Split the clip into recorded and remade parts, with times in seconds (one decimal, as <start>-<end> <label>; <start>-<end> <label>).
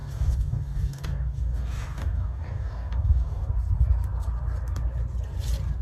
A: 0.0-3.5 remade; 3.5-5.8 recorded